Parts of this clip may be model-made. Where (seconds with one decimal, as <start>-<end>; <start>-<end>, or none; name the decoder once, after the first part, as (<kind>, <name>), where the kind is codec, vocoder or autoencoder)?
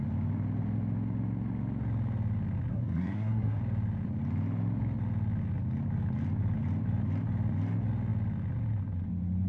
2.7-3.6 (codec, SNAC)